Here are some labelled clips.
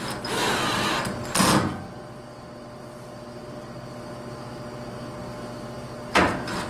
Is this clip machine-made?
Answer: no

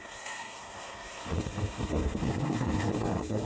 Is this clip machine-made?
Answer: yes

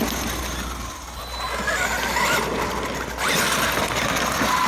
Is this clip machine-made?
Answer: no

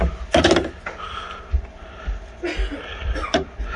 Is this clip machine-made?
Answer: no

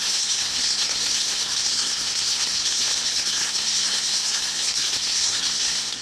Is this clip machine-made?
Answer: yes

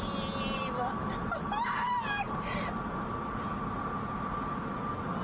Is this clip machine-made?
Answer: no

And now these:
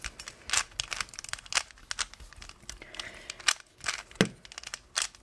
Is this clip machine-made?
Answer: no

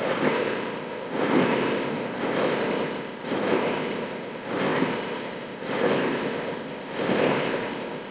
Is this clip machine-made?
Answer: yes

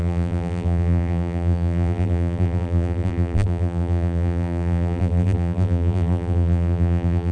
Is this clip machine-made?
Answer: yes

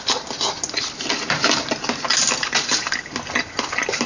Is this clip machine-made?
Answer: no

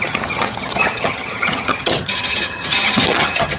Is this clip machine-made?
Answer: yes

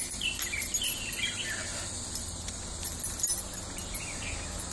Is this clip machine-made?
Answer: no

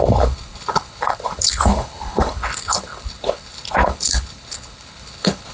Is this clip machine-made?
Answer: yes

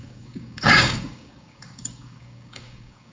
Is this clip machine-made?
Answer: yes